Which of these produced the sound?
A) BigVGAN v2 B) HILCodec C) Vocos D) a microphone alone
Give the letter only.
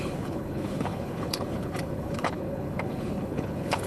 B